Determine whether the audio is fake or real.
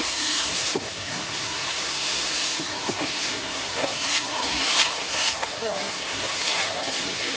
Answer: fake